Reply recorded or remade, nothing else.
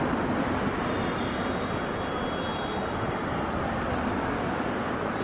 recorded